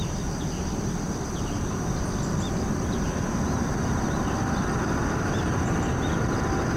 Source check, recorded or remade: recorded